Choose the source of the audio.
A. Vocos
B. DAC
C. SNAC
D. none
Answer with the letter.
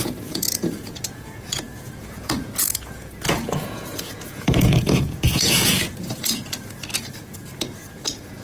A